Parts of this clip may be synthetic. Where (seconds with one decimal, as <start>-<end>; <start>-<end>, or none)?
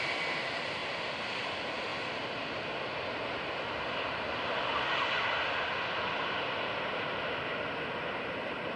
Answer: none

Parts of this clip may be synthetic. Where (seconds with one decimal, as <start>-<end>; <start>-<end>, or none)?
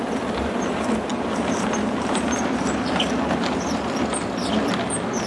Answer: 1.1-3.1